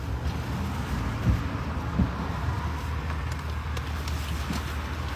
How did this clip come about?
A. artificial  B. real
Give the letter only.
B